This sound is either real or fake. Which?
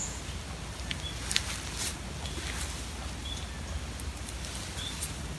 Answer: real